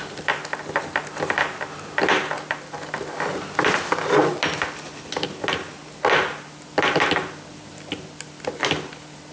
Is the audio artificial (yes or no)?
no